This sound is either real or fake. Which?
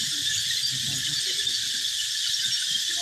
real